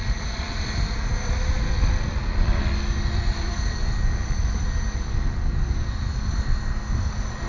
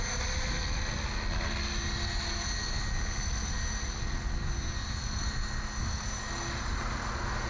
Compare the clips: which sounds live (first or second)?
second